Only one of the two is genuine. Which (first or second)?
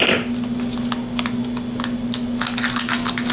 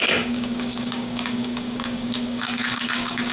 first